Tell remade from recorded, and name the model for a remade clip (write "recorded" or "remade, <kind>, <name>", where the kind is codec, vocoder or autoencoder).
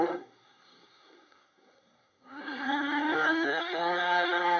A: remade, codec, SNAC